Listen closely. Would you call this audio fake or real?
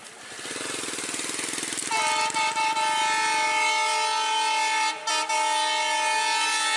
real